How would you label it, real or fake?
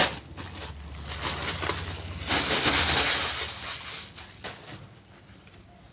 real